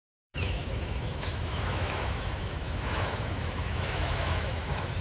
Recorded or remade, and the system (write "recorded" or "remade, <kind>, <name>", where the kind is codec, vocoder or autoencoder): remade, autoencoder, DAC-VAE